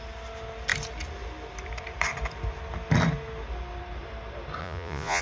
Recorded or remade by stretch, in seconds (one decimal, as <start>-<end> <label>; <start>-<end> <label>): 0.0-4.6 recorded; 4.6-5.2 remade